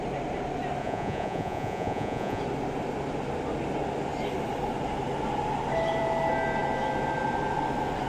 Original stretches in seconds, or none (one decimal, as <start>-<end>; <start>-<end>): 0.0-0.8; 2.4-8.1